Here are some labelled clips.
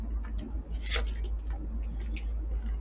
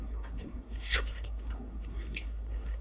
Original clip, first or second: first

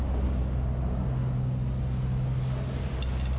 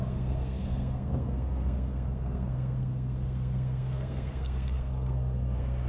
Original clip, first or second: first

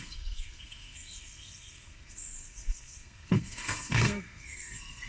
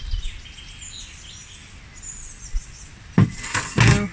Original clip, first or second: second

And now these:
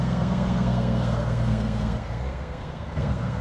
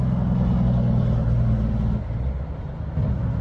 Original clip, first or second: second